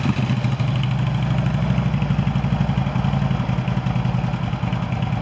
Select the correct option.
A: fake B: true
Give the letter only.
B